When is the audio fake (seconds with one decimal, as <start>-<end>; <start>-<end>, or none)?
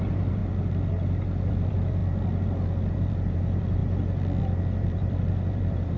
0.0-0.4; 1.5-2.0; 2.9-3.8; 4.4-6.0